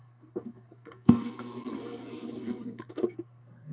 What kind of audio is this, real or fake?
fake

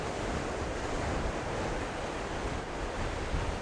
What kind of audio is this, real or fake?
real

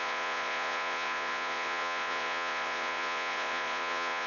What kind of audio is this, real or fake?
fake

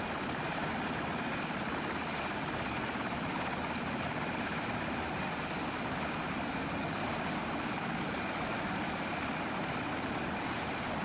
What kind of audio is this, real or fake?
real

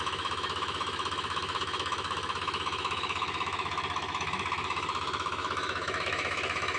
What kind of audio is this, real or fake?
fake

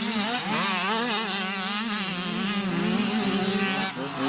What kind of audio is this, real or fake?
real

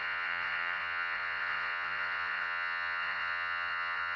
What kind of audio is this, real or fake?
fake